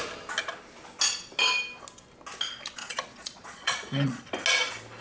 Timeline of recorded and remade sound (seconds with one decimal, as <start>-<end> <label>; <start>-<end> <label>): 0.0-2.8 recorded; 2.8-4.2 remade; 4.2-5.0 recorded